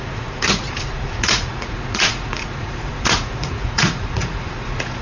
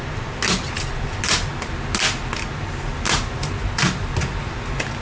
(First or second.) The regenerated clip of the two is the first